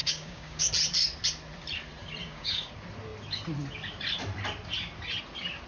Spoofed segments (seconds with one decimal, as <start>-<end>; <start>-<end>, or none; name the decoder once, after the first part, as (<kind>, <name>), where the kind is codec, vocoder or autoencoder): 0.0-0.7 (codec, DAC); 2.2-2.7